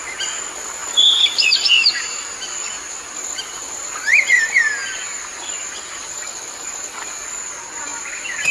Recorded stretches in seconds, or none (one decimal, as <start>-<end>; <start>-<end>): 0.0-0.8; 1.4-4.8; 7.0-8.5